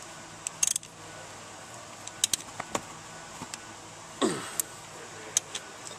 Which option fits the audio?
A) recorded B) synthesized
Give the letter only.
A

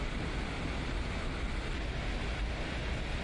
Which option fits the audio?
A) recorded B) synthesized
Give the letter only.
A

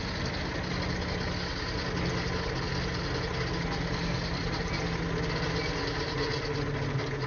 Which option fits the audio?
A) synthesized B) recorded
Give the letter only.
B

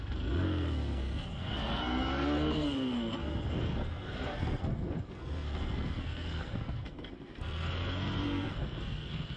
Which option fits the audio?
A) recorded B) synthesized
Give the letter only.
B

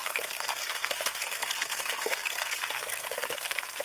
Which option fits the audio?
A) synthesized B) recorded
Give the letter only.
A